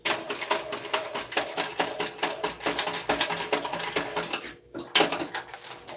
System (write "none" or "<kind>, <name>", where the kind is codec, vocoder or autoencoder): none